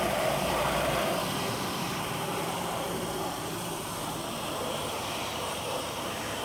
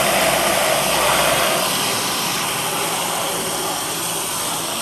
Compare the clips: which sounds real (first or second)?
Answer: second